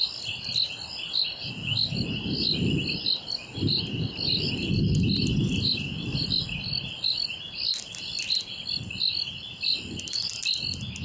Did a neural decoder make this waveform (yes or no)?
no